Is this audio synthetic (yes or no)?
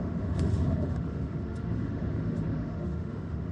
yes